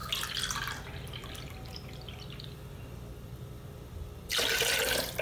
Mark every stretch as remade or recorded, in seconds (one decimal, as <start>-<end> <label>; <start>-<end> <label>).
0.0-1.2 recorded; 1.2-4.3 remade; 4.3-5.2 recorded